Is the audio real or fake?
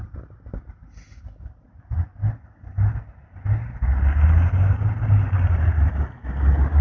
real